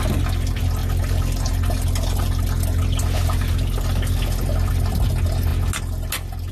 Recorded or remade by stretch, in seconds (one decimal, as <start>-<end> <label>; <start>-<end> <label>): 0.0-6.5 recorded